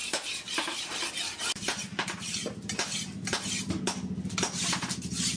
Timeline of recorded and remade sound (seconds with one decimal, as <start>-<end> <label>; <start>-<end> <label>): 0.0-5.4 recorded